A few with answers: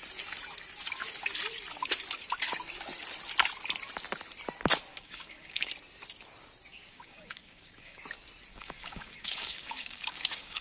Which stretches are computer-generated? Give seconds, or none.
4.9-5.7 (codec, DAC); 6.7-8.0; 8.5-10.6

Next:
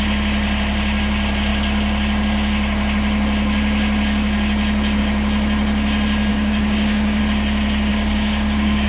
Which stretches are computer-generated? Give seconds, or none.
6.3-7.2 (codec, DAC); 7.9-8.9

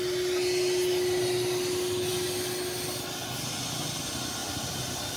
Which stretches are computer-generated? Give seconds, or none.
none